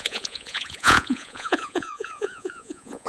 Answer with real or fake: fake